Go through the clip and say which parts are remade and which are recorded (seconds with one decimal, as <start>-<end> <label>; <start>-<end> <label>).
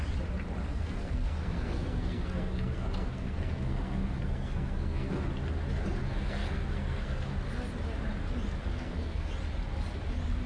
0.0-0.7 recorded; 0.7-5.2 remade; 5.2-6.0 recorded; 6.0-7.3 remade; 7.3-8.6 recorded; 8.6-9.3 remade; 9.3-10.5 recorded